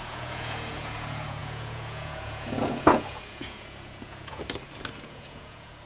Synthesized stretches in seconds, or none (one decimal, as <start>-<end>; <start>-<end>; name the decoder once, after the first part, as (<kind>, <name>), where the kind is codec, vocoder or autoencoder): 0.0-4.4 (vocoder, Vocos); 5.0-5.9

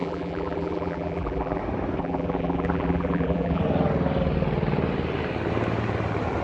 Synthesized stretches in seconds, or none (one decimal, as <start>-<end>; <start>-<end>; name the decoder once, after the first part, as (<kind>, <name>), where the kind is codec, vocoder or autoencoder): 0.0-1.6 (vocoder, BigVGAN v2); 2.0-3.6

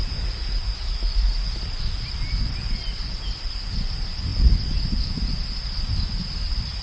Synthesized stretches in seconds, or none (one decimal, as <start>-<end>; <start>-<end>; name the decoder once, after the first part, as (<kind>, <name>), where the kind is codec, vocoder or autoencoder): none